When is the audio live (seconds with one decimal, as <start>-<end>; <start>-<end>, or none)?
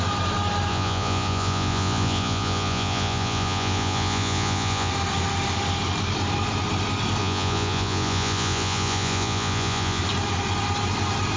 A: 0.0-0.7; 4.9-7.2; 10.0-11.4